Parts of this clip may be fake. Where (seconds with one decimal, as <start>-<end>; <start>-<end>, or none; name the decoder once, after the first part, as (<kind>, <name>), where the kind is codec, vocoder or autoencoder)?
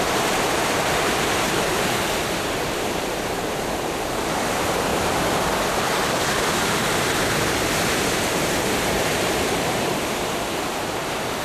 0.0-11.4 (vocoder, BigVGAN v2)